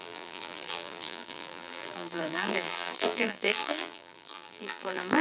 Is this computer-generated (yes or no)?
yes